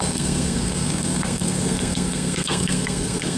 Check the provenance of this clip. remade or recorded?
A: remade